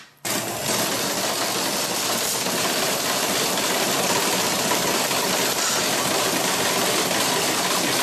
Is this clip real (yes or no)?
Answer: yes